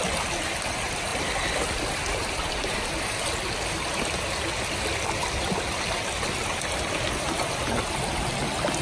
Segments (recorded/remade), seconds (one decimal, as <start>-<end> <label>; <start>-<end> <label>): 0.0-8.8 recorded

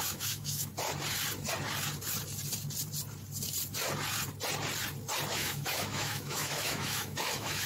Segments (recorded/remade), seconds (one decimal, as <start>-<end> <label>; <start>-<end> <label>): 0.0-0.7 remade; 0.7-5.3 recorded; 5.3-7.7 remade

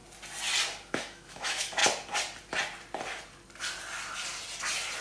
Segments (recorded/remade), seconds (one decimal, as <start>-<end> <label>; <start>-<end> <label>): 0.0-0.9 recorded; 0.9-1.8 remade; 1.8-5.0 recorded